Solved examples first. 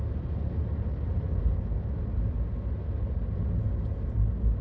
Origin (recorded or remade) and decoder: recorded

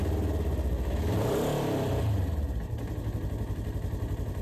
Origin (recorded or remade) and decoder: recorded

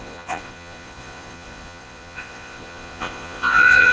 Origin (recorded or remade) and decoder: remade, vocoder, Vocos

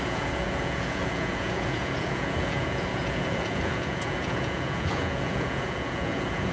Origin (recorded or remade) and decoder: remade, vocoder, Vocos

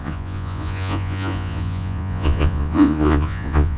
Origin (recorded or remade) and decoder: remade, vocoder, Vocos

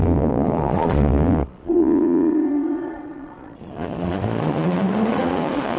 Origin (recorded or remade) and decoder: remade, vocoder, Vocos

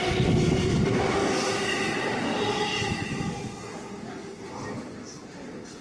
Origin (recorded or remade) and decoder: recorded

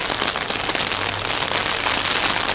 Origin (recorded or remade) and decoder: recorded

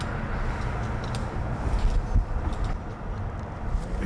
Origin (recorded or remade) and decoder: recorded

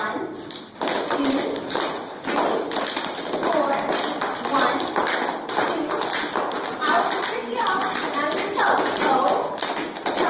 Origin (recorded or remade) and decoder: recorded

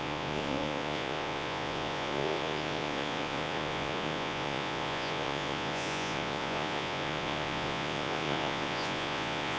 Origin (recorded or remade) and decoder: remade, vocoder, Vocos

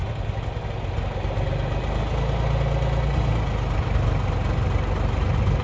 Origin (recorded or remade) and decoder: recorded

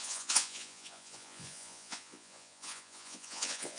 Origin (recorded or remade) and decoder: remade, vocoder, Vocos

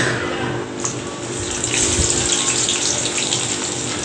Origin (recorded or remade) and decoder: recorded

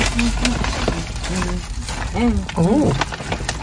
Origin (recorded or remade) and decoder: recorded